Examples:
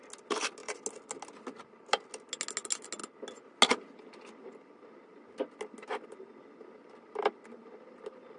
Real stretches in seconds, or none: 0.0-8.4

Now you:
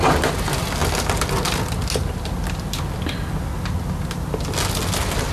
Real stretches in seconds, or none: 0.0-5.3